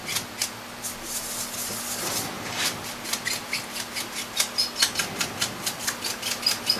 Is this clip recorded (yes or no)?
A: yes